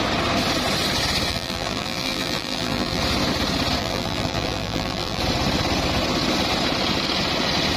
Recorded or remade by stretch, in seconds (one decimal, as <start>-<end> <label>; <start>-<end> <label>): 0.0-1.3 recorded; 1.3-3.0 remade; 3.0-3.8 recorded; 3.8-5.2 remade; 5.2-7.8 recorded